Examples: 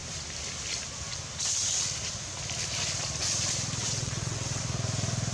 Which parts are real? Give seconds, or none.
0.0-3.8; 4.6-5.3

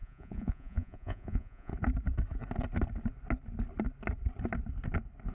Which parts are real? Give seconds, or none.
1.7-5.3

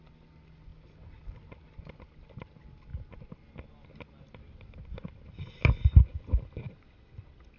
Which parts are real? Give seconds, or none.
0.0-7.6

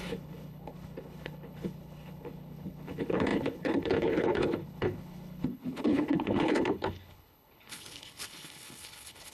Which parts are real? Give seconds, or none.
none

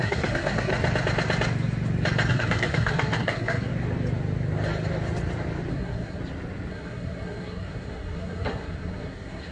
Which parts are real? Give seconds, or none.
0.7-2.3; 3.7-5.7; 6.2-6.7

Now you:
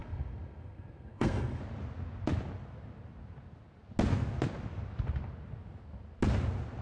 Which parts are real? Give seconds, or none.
1.6-6.8

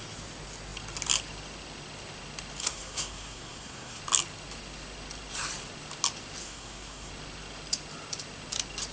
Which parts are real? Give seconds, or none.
0.0-2.6; 4.0-6.4; 7.1-8.9

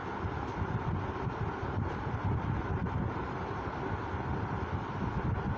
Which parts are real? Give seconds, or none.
0.0-5.6